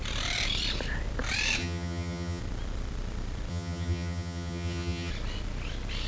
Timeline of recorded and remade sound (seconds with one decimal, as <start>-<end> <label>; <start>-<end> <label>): 0.0-1.6 recorded; 1.6-2.4 remade; 2.4-3.5 recorded; 3.5-5.1 remade; 5.1-6.1 recorded